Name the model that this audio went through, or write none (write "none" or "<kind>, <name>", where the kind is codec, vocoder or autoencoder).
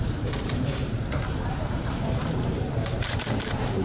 vocoder, BigVGAN v2